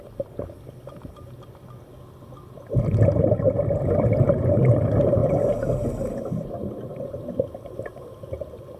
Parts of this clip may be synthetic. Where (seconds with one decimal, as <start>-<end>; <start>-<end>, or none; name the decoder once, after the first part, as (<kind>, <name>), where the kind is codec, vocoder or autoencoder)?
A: none

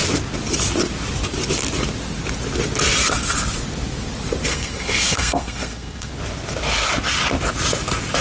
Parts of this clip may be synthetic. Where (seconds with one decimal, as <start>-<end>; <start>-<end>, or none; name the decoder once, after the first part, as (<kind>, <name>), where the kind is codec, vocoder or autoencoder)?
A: 4.5-6.1 (codec, SNAC)